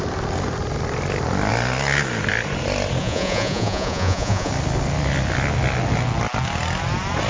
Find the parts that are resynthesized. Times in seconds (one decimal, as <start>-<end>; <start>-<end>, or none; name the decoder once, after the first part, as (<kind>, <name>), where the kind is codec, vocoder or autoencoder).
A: 3.0-4.5 (vocoder, Vocos)